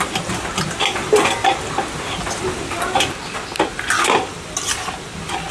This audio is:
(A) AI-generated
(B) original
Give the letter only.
B